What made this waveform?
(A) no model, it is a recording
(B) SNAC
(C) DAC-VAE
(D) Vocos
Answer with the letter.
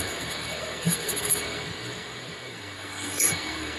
B